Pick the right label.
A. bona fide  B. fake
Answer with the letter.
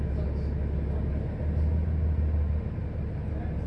A